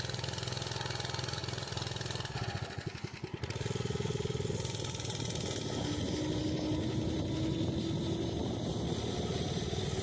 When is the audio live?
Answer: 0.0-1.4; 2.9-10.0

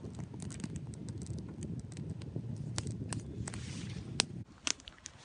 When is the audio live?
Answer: 0.0-5.2

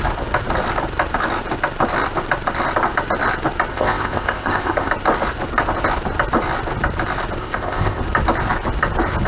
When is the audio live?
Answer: 0.0-3.7; 4.9-7.4; 8.0-9.3

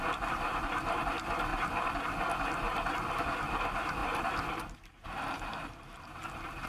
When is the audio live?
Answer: 1.5-3.1; 4.0-4.5

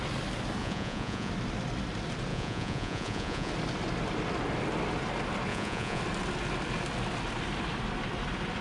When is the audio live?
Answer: 0.0-0.6; 1.3-2.3; 3.5-5.5; 6.0-8.6

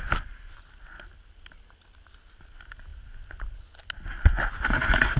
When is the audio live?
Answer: 0.0-5.2